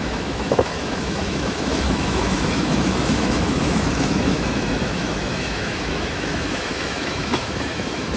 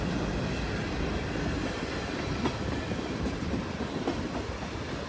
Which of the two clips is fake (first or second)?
first